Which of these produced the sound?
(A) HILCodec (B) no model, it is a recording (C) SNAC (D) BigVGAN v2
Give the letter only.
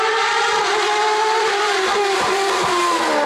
D